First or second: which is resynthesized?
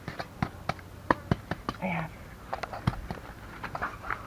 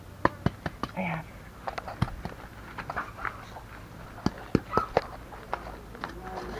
first